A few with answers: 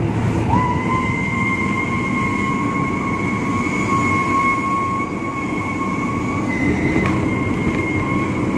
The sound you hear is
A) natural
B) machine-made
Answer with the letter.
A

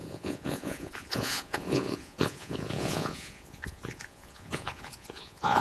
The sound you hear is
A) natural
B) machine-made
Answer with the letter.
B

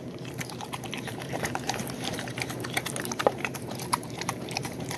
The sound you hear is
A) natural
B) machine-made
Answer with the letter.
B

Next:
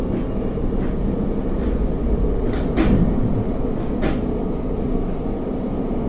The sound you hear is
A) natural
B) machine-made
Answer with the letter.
A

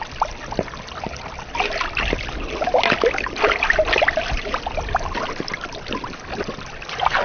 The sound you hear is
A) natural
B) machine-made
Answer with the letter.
A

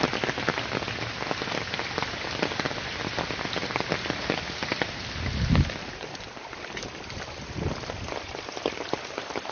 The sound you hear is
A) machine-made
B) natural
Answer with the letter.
B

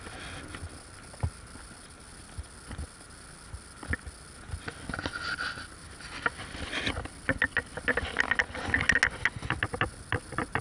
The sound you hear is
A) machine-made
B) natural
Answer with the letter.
B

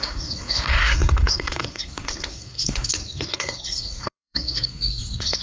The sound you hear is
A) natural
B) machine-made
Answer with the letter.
B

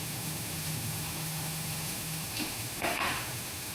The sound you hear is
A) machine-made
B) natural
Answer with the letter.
A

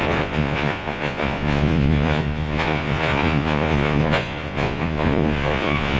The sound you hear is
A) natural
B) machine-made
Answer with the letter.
B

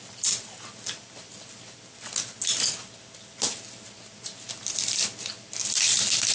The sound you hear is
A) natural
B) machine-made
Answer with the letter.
A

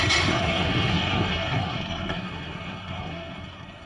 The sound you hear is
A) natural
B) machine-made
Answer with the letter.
B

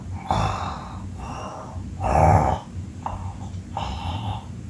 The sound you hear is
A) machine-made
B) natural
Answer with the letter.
B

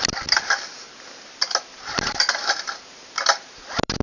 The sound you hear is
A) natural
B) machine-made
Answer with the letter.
A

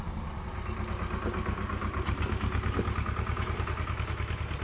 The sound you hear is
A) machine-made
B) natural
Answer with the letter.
B